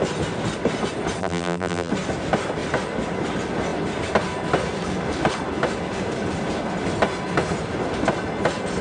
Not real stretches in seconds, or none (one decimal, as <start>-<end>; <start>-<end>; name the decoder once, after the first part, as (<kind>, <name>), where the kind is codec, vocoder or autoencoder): 1.2-1.9 (vocoder, BigVGAN v2)